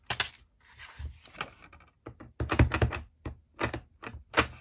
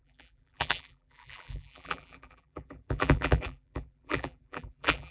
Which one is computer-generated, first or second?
second